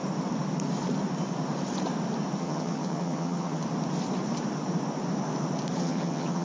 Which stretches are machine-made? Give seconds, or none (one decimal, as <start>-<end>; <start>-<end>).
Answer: 2.4-3.6; 5.8-6.4